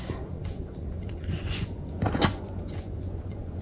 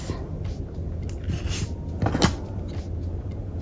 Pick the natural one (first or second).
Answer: second